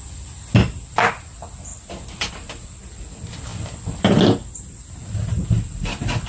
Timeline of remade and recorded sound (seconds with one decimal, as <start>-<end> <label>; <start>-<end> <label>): 0.0-6.3 recorded